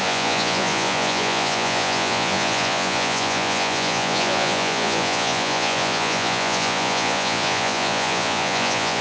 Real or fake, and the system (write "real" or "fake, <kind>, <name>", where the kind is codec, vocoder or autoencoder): fake, vocoder, Vocos